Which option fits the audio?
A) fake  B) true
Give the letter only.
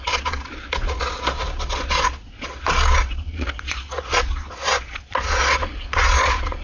A